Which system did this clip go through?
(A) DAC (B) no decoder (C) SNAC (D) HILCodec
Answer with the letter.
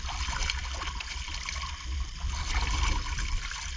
B